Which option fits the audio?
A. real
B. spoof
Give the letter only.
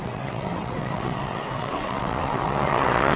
B